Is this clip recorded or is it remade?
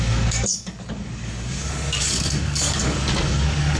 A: remade